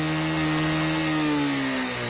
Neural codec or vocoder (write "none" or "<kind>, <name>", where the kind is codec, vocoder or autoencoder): none